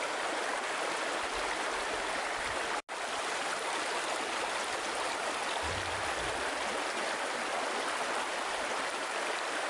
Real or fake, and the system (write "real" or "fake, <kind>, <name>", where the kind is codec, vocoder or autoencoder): real